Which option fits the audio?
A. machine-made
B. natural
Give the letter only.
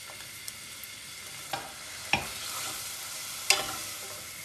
B